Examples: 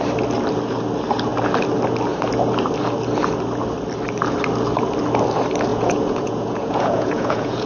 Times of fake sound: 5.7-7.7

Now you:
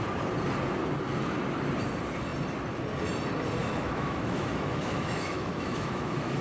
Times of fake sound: 3.6-6.4

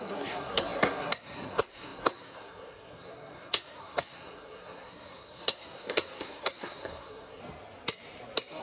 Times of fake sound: 0.0-7.4